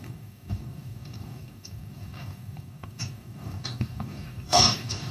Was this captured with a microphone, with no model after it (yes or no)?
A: no